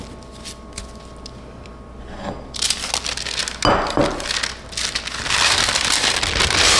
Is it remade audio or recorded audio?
recorded